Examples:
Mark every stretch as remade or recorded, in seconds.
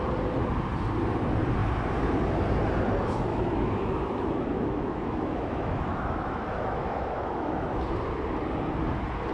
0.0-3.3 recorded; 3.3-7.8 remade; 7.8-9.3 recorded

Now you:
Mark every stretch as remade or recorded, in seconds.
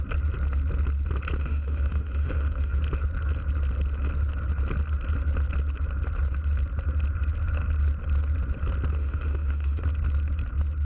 0.0-1.4 recorded; 1.4-2.8 remade; 2.8-9.0 recorded; 9.0-9.8 remade; 9.8-10.8 recorded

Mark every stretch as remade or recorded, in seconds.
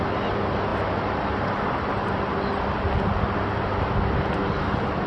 0.0-5.1 recorded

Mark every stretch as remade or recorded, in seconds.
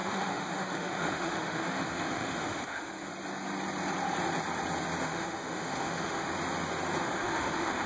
0.0-3.1 remade; 3.1-5.0 recorded; 5.0-6.3 remade; 6.3-7.0 recorded; 7.0-7.9 remade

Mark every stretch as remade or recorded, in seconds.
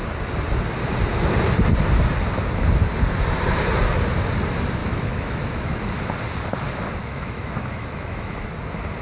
0.0-4.8 recorded; 4.8-6.1 remade; 6.1-7.0 recorded; 7.0-8.5 remade; 8.5-9.0 recorded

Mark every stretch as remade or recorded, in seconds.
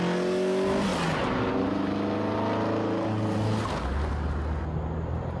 0.0-5.4 recorded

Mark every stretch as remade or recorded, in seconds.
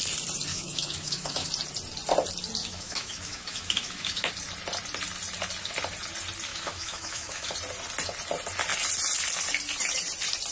0.0-0.5 recorded; 0.5-1.5 remade; 1.5-2.6 recorded; 2.6-4.3 remade; 4.3-6.5 recorded; 6.5-7.5 remade; 7.5-10.5 recorded